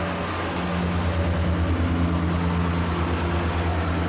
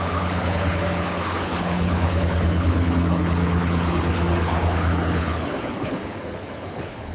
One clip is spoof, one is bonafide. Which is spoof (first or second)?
second